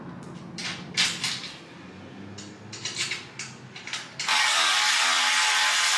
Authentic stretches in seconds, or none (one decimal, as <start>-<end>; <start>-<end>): 0.0-4.3; 4.9-6.0